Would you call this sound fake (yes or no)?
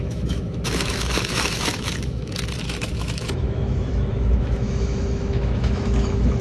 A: yes